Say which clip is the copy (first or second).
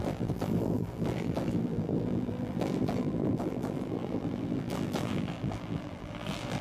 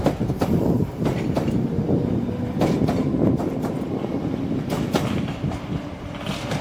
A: first